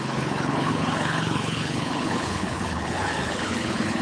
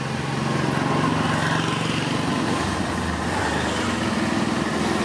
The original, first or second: second